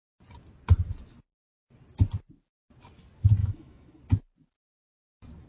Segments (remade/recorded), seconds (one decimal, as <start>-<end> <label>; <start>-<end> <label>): 0.0-3.4 recorded; 3.4-4.0 remade; 4.0-5.5 recorded